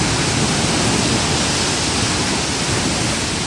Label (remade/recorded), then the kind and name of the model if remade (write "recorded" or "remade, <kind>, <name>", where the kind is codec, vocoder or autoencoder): recorded